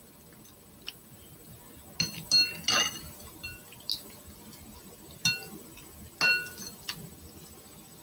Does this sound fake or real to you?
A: real